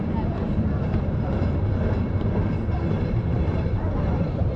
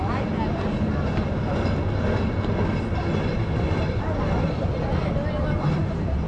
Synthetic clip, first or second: first